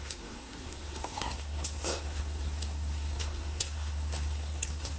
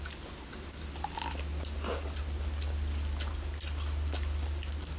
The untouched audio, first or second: second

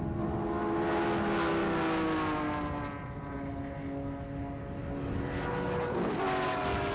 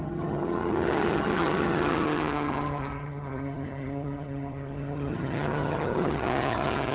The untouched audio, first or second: first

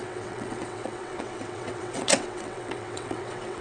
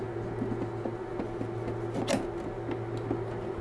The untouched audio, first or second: second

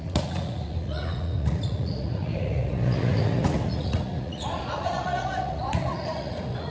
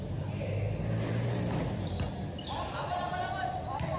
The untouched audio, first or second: second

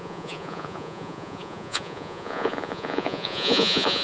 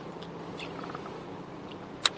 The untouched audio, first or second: second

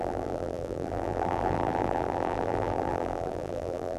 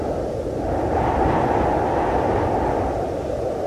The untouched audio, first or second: second